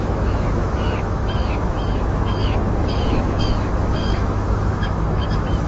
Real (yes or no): no